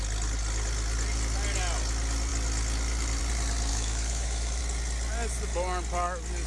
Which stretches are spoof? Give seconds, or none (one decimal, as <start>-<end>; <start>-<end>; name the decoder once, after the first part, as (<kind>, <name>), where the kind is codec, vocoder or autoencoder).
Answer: 3.7-4.6 (autoencoder, DAC-VAE)